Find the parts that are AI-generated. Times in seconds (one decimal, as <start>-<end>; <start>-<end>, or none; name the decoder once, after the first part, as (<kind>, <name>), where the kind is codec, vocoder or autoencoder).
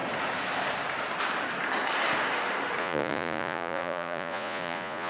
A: 2.8-5.1 (vocoder, Vocos)